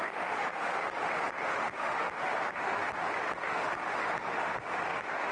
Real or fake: fake